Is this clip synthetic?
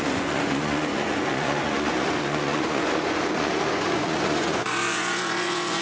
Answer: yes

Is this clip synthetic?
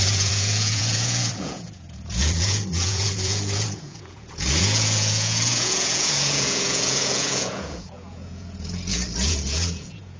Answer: yes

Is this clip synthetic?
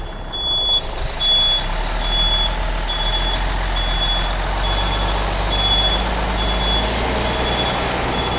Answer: no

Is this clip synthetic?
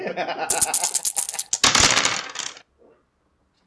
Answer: no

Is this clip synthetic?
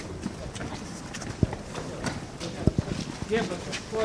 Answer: no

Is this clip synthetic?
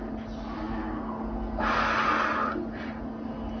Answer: no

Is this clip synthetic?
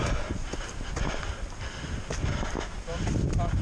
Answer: no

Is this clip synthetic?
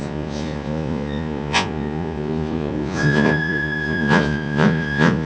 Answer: yes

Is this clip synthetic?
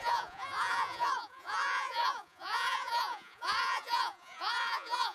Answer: yes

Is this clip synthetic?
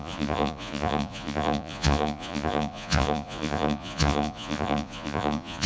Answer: yes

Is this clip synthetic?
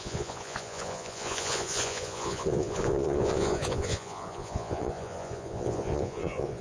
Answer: yes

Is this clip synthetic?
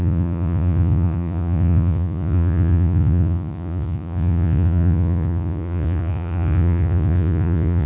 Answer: yes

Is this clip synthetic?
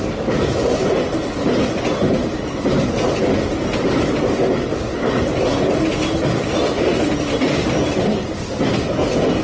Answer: no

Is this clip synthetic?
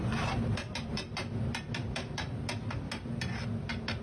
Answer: no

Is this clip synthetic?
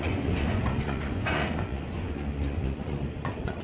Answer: yes